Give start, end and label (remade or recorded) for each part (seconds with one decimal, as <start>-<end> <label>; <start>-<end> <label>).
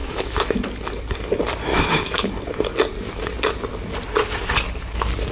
0.0-0.6 remade; 0.6-1.7 recorded; 1.7-2.3 remade; 2.3-5.3 recorded